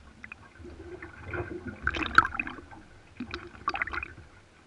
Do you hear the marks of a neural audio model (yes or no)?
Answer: no